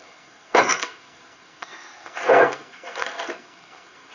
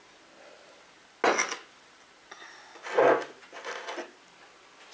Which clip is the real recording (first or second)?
second